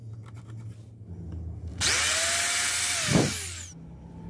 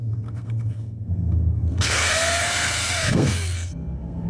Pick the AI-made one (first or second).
second